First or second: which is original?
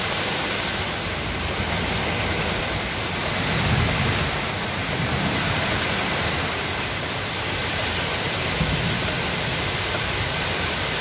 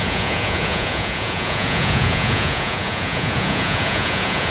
first